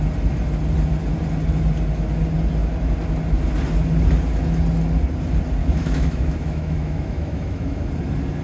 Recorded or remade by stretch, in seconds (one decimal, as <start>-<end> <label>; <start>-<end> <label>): 0.0-5.6 recorded; 5.6-7.9 remade; 7.9-8.4 recorded